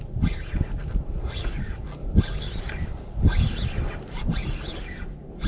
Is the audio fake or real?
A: real